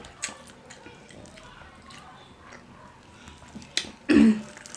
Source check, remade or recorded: recorded